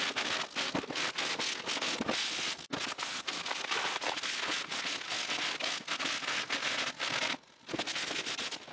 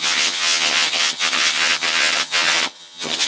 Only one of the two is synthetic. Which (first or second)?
second